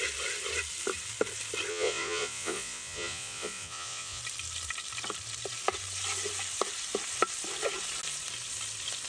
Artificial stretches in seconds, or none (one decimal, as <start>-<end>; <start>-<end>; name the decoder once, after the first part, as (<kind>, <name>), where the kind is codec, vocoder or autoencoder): 1.7-4.2 (vocoder, Vocos)